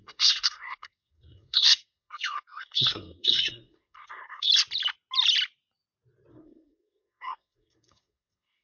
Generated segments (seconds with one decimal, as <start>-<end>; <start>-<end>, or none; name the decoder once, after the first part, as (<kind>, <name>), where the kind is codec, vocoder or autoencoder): 0.0-4.5 (codec, SNAC); 6.3-8.6